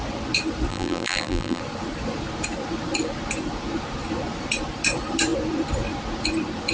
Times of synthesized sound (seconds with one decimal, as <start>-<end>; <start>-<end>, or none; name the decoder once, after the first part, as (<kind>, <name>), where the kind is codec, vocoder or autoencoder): 0.7-1.6 (vocoder, BigVGAN v2)